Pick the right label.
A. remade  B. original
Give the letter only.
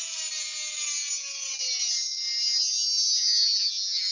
B